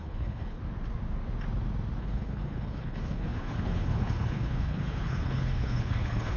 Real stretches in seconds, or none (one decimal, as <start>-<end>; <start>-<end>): 0.6-2.0